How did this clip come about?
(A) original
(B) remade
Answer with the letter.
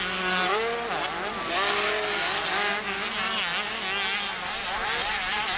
A